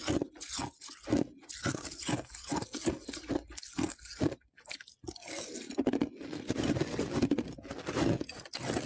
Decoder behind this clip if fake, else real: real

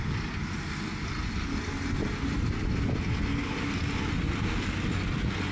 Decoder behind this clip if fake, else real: real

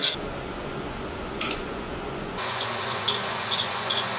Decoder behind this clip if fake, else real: fake, vocoder, Vocos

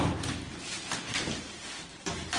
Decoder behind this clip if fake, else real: real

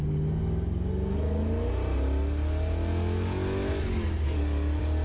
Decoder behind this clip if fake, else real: real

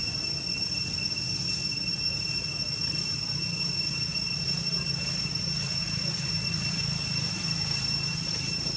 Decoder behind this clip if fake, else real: real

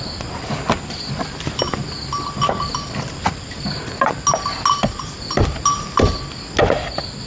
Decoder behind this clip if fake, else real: real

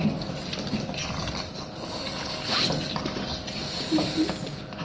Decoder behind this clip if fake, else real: real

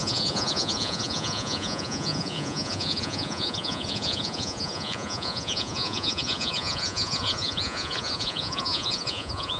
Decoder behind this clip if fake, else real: fake, vocoder, Vocos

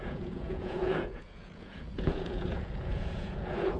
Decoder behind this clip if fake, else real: fake, vocoder, Vocos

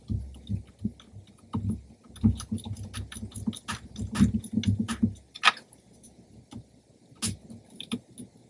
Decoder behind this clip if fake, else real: real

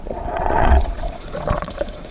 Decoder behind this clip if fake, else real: fake, vocoder, Vocos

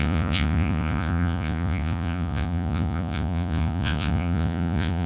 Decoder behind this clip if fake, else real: fake, vocoder, Vocos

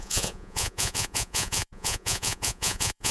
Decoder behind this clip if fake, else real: fake, vocoder, Vocos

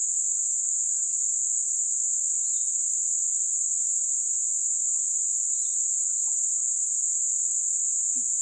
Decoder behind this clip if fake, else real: real